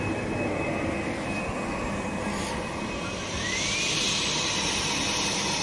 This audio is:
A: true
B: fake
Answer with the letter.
A